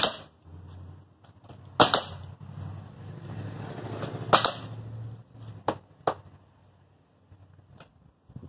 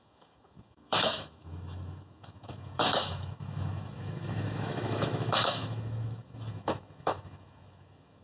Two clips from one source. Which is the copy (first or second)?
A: second